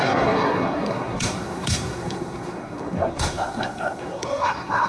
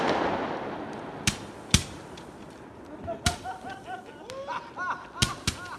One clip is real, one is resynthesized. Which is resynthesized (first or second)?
first